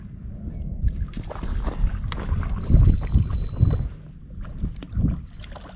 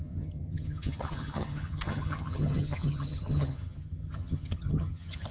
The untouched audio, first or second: first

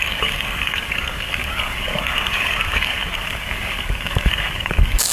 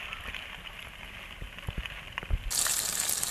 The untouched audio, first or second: second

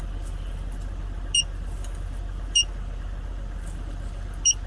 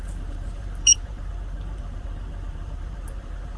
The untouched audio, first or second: first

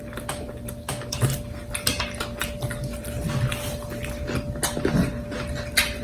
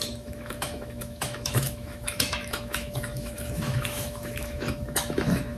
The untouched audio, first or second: first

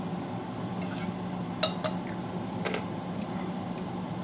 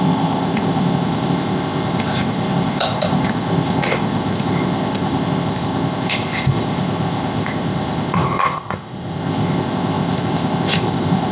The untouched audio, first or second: first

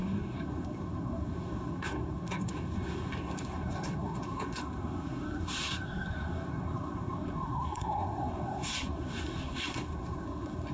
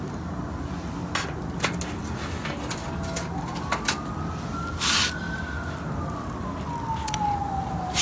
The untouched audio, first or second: second